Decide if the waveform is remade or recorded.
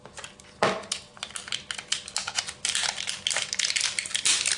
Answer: recorded